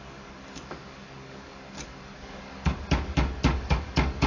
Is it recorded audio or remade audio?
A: remade